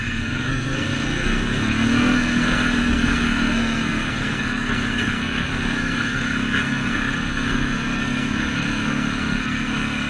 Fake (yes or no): yes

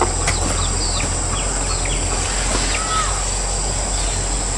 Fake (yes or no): no